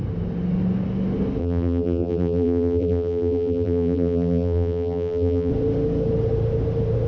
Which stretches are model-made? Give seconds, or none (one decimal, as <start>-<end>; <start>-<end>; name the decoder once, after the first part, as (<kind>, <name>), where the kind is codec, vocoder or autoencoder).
1.4-5.5 (vocoder, BigVGAN v2)